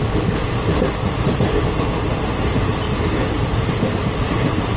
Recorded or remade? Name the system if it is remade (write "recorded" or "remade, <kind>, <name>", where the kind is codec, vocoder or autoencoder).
recorded